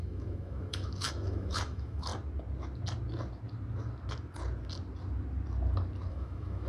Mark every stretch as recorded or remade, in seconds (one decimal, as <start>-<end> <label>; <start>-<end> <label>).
0.0-2.1 remade; 2.1-6.1 recorded; 6.1-6.7 remade